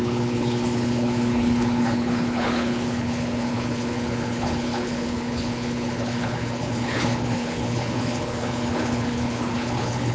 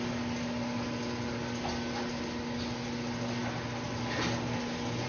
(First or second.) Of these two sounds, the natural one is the second